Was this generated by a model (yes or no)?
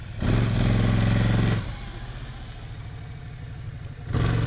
no